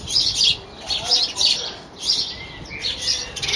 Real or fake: real